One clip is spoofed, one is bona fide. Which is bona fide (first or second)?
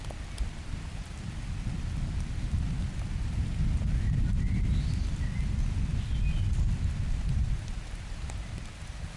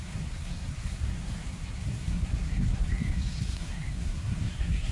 first